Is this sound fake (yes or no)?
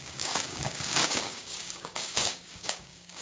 yes